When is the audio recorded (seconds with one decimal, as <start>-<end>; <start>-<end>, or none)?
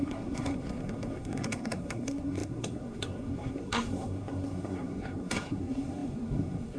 none